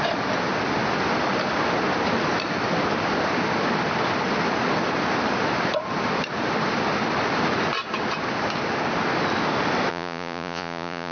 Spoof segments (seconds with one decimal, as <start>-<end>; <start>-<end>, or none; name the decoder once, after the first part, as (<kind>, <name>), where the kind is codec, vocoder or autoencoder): 9.9-11.1 (vocoder, Vocos)